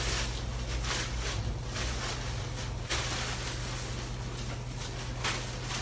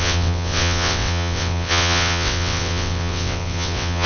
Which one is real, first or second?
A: first